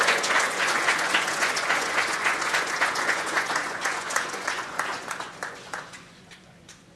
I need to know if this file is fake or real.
fake